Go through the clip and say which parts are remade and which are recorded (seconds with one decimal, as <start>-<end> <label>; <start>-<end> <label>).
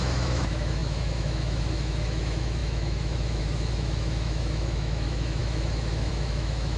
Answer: 0.0-6.8 remade